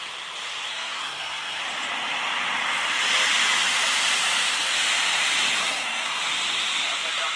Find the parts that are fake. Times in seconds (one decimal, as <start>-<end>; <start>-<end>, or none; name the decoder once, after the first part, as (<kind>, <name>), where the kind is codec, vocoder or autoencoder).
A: 0.7-1.6 (codec, SNAC); 5.6-6.2